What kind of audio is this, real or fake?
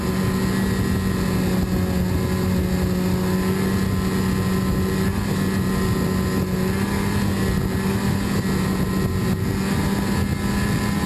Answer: real